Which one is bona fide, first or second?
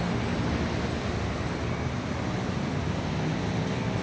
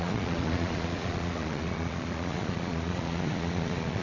first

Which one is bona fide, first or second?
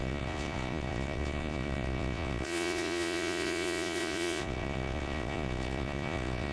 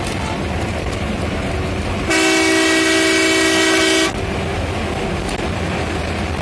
second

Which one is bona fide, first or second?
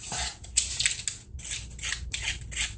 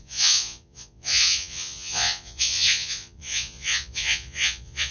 first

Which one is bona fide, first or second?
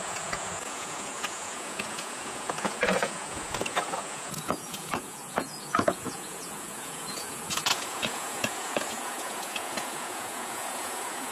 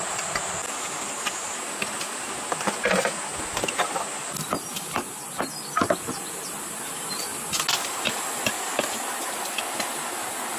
second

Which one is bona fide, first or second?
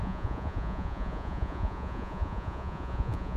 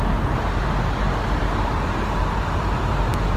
second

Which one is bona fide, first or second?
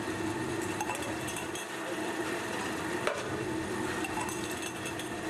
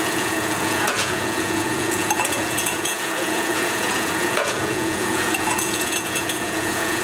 first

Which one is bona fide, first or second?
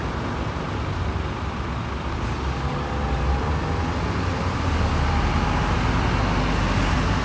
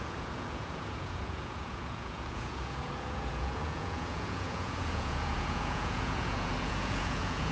first